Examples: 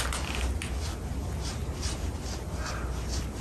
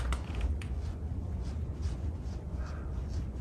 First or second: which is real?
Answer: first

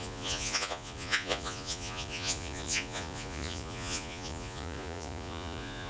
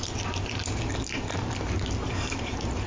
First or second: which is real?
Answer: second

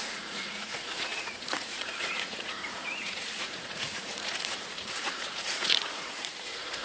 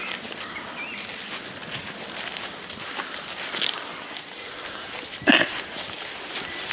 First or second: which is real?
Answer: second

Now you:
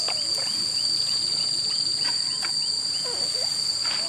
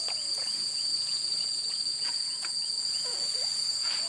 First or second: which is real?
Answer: first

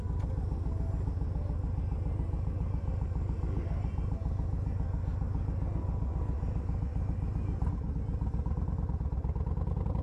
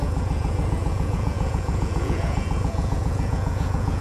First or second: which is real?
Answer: first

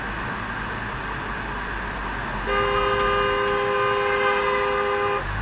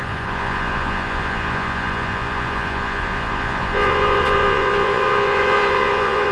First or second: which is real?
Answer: first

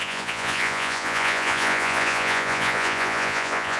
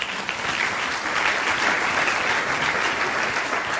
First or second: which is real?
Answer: second